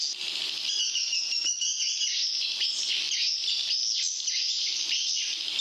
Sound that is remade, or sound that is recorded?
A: recorded